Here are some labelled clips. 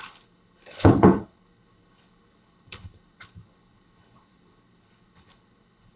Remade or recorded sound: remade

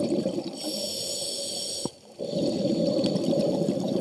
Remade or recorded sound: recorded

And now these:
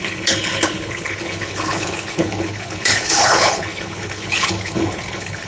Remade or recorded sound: remade